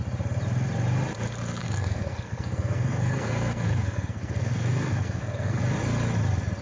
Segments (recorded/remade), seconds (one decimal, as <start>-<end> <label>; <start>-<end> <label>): 0.0-1.6 recorded; 1.6-5.6 remade; 5.6-6.6 recorded